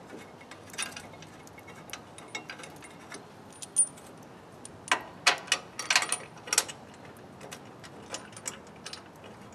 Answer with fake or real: real